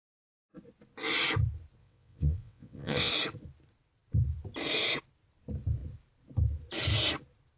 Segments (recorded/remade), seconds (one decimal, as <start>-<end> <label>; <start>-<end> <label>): 0.0-1.8 recorded; 1.8-3.1 remade; 3.1-7.6 recorded